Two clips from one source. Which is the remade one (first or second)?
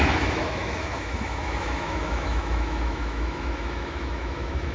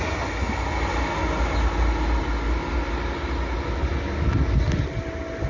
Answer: first